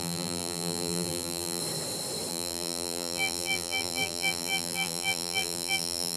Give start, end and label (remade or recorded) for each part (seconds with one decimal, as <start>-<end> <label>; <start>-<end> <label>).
0.0-1.6 remade; 1.6-2.3 recorded; 2.3-6.2 remade